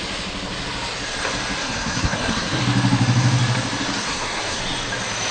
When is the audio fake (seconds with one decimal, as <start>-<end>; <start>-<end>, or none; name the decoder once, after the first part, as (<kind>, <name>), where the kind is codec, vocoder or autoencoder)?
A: 1.6-2.6 (codec, SNAC); 4.0-4.6